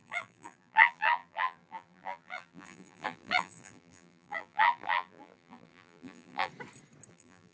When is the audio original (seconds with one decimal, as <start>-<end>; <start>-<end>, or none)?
6.5-7.1